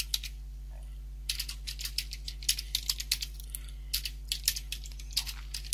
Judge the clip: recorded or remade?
recorded